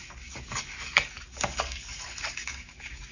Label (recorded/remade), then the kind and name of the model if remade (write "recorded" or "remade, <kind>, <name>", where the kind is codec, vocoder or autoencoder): remade, codec, DAC